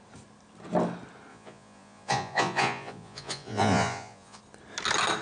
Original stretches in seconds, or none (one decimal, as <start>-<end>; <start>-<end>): 0.0-1.3; 4.4-5.2